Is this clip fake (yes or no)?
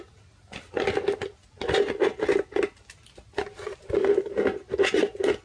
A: no